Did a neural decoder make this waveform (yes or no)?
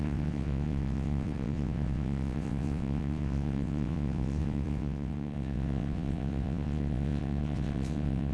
yes